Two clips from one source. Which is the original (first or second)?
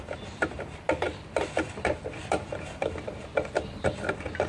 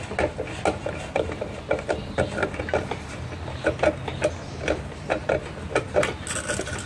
second